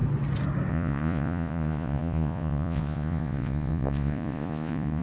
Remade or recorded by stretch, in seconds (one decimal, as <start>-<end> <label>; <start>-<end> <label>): 0.0-0.7 recorded; 0.7-5.0 remade